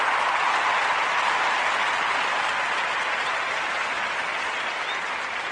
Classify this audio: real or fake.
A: real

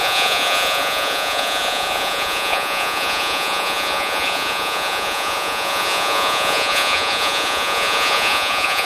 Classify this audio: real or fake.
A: fake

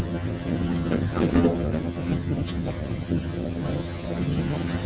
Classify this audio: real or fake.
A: fake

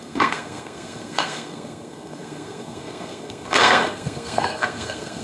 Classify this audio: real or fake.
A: fake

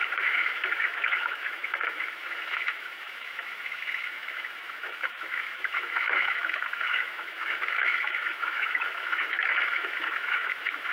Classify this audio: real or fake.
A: fake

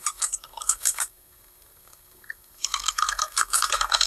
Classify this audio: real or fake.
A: fake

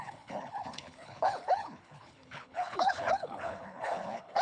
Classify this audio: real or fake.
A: fake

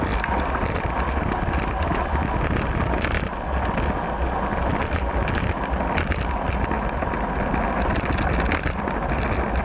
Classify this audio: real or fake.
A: real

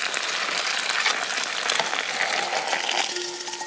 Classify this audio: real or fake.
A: real